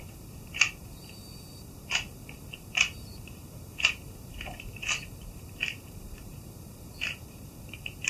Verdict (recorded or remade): remade